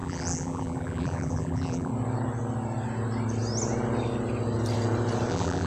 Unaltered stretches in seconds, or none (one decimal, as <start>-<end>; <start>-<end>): 1.9-5.3